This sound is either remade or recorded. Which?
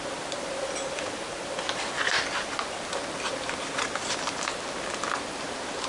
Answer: recorded